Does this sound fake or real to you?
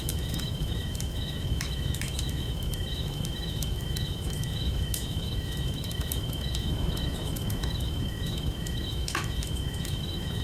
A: fake